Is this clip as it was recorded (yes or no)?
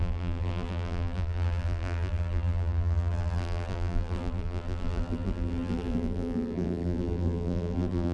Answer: no